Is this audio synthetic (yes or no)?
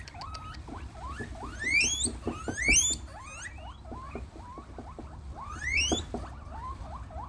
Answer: no